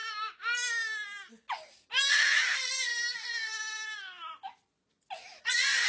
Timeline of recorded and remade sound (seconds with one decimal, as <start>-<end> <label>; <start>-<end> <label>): 0.0-2.1 recorded; 2.1-2.9 remade; 2.9-5.4 recorded; 5.4-5.9 remade